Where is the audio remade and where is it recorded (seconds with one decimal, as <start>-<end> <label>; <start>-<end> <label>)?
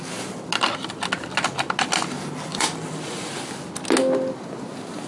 0.0-2.5 recorded; 2.5-3.3 remade; 3.3-5.1 recorded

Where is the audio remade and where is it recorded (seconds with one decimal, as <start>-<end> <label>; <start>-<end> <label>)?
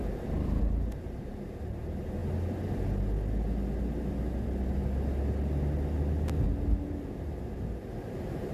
0.0-2.2 remade; 2.2-7.1 recorded; 7.1-8.5 remade